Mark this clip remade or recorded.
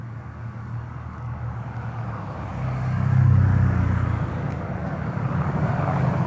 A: remade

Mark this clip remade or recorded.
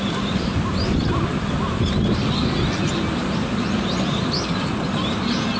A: recorded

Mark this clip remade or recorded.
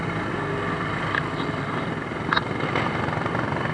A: recorded